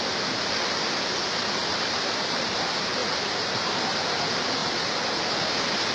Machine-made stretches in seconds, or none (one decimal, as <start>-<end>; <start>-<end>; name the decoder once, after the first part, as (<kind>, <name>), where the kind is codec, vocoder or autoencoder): 1.6-2.5 (vocoder, BigVGAN v2)